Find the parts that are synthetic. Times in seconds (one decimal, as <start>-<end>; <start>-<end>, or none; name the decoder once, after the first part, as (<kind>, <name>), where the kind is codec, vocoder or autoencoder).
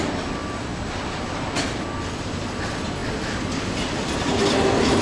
none